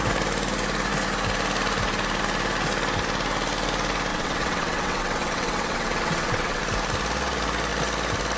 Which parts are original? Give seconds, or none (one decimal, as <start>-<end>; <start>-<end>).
0.0-4.1; 6.6-8.4